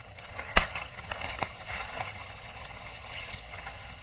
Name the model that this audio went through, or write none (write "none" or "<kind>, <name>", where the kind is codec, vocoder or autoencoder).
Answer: vocoder, HiFi-GAN